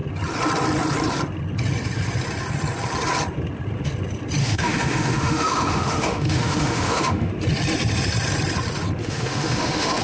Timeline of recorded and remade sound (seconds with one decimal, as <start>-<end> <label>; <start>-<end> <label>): 0.0-4.4 recorded; 4.4-7.3 remade; 7.3-9.0 recorded; 9.0-10.0 remade